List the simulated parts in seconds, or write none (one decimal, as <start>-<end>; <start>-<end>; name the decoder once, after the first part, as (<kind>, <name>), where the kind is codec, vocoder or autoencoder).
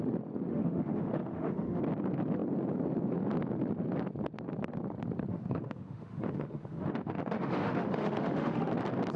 0.5-1.8 (autoencoder, DAC-VAE); 5.3-8.7